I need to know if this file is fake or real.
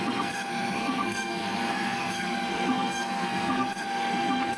fake